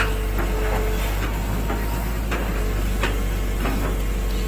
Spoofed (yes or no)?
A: no